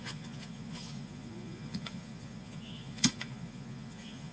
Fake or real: fake